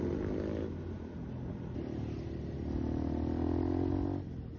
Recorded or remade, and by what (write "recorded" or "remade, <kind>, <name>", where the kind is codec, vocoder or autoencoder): recorded